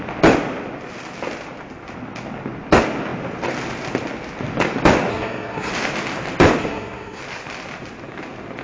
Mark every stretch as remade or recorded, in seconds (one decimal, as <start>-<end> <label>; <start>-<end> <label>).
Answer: 0.0-5.1 recorded; 5.1-5.7 remade; 5.7-6.6 recorded; 6.6-7.2 remade; 7.2-8.6 recorded